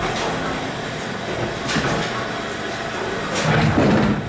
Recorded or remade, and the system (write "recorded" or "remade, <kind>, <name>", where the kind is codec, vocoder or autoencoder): recorded